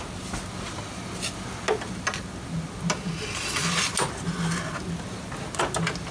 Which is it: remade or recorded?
recorded